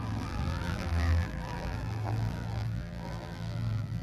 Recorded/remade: remade